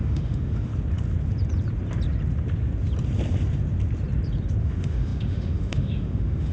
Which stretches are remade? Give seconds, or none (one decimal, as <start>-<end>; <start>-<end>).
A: 0.0-0.7; 4.6-6.5